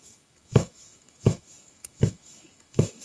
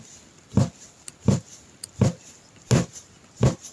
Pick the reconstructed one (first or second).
first